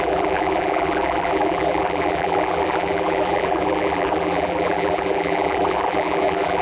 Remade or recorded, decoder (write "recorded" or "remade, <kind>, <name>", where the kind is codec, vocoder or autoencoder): remade, vocoder, BigVGAN v2